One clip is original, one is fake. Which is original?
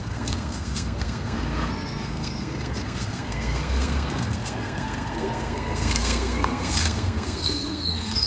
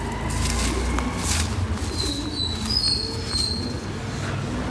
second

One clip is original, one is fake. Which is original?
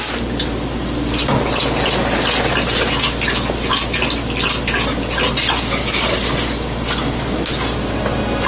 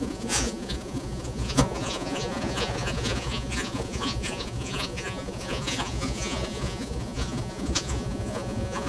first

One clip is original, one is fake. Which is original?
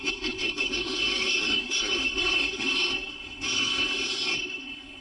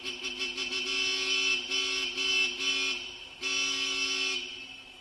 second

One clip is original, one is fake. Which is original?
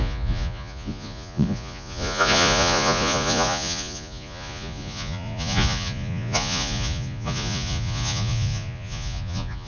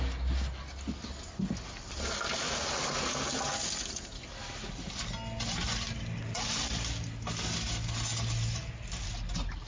second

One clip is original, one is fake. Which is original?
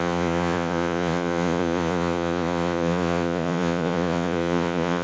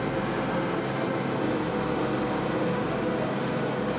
second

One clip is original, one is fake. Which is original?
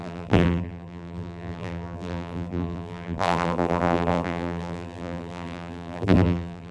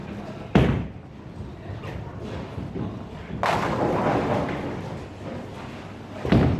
second